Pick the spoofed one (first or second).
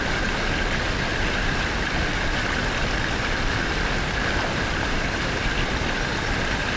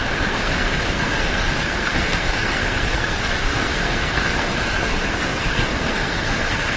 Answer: second